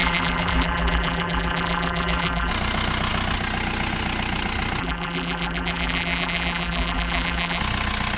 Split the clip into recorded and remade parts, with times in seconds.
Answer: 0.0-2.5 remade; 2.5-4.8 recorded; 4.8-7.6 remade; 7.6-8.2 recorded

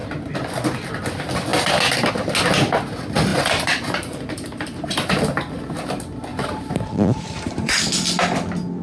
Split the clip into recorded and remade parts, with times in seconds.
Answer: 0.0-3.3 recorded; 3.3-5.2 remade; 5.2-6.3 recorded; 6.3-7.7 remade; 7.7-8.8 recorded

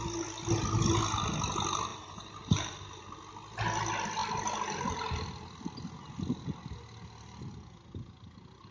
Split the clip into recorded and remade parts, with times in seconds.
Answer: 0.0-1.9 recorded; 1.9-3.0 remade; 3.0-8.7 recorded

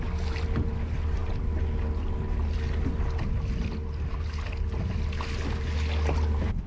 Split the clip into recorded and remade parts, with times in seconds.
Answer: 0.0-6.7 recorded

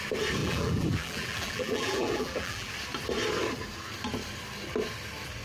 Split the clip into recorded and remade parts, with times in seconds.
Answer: 0.0-0.4 recorded; 0.4-2.7 remade; 2.7-5.4 recorded